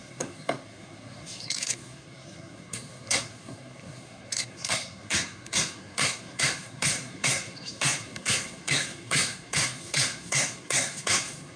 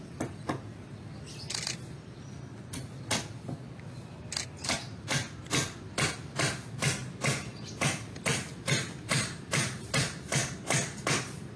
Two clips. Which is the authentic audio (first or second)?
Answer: second